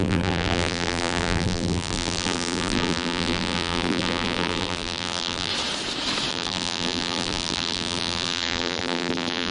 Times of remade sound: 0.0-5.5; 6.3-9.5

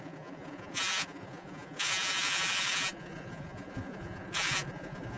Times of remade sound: 0.0-5.2